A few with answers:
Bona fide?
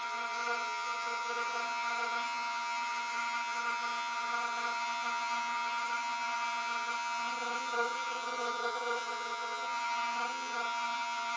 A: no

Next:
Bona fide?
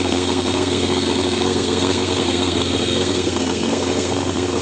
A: no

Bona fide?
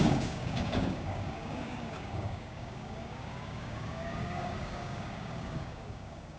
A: no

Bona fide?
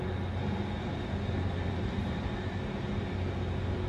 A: yes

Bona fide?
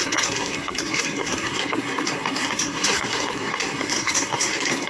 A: no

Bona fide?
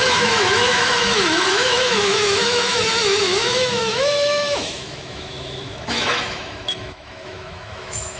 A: no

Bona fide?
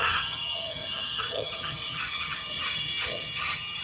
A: no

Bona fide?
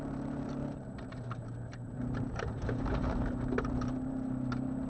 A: no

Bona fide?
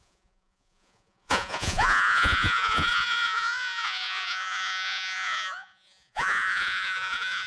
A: no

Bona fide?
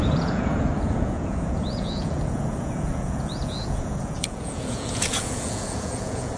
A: no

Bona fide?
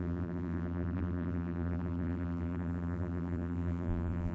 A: no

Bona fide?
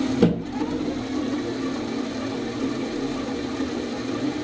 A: yes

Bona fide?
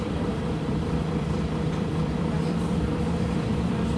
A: no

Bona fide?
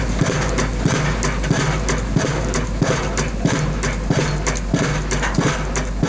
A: yes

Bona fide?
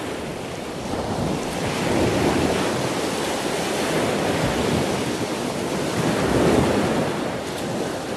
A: yes